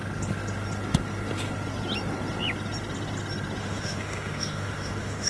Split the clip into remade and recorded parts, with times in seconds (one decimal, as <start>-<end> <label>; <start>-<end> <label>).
0.0-3.6 recorded; 3.6-5.3 remade